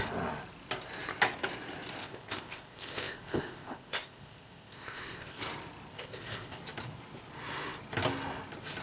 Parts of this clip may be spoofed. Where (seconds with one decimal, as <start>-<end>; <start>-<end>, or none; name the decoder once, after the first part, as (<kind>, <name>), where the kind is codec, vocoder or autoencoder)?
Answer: 2.0-5.4 (codec, ZipCodec); 5.9-6.6